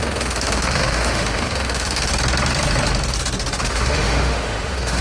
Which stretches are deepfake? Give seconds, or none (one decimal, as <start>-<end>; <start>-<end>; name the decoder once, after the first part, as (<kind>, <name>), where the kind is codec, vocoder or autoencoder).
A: 0.0-2.1 (autoencoder, DAC-VAE); 3.6-5.0